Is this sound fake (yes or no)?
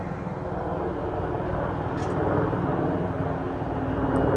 no